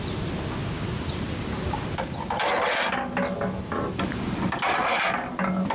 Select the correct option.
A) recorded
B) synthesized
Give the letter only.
A